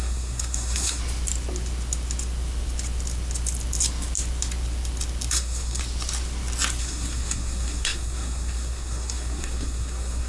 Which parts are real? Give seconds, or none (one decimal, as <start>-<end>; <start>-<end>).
1.0-5.3; 5.8-6.8